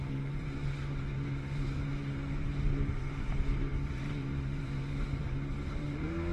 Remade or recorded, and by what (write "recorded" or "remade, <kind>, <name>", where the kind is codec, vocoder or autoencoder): remade, vocoder, BigVGAN v2